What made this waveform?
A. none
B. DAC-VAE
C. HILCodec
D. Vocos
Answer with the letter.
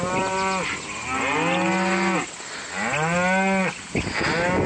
A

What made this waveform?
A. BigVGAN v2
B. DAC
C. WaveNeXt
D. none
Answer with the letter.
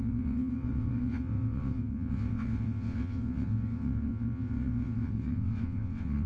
C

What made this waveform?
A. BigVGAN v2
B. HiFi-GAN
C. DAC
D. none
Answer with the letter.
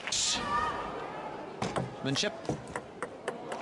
A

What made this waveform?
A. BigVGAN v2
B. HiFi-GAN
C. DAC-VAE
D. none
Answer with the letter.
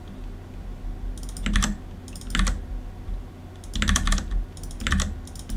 D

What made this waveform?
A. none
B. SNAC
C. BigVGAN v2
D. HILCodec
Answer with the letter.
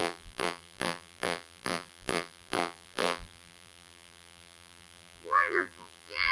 C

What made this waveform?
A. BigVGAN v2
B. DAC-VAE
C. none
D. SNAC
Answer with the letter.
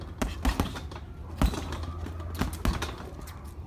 C